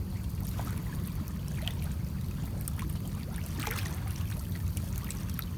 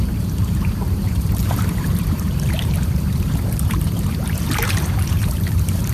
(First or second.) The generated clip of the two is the second